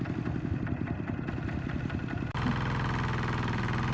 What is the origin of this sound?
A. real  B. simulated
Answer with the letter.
A